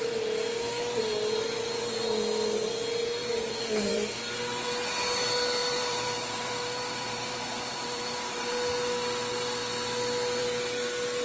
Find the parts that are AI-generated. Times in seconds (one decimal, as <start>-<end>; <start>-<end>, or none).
3.2-4.2; 5.6-8.5